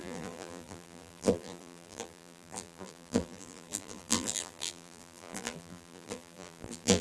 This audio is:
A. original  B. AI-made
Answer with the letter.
B